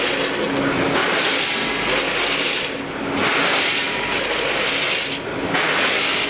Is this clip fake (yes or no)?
no